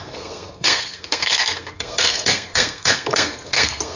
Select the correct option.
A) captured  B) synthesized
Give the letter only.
B